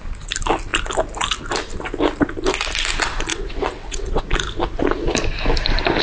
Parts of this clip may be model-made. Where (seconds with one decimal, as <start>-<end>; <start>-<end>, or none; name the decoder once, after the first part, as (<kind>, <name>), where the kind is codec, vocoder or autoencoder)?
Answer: 3.3-4.2 (vocoder, WaveNeXt)